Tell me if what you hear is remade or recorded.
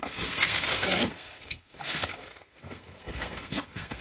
remade